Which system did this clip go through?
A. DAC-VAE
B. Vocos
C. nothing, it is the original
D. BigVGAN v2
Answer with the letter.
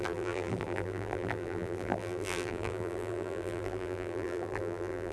D